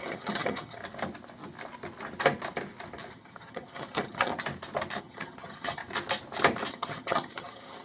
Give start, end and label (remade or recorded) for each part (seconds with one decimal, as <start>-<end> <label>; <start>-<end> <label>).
0.0-0.8 remade; 0.8-3.1 recorded; 3.1-4.3 remade; 4.3-5.0 recorded; 5.0-5.8 remade; 5.8-6.7 recorded; 6.7-7.8 remade